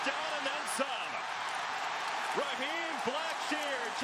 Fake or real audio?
fake